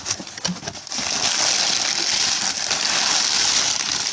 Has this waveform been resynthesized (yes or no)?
no